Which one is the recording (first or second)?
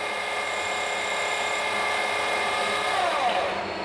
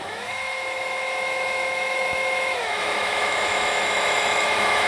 first